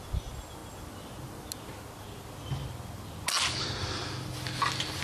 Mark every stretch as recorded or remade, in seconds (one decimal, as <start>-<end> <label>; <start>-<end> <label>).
0.0-5.0 recorded